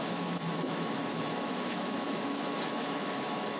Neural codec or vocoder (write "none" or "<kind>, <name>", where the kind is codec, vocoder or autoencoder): autoencoder, DAC-VAE